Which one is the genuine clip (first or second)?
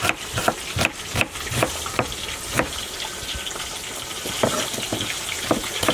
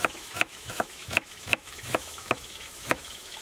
first